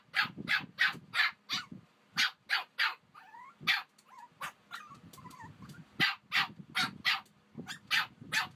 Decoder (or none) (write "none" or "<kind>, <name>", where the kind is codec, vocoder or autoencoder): none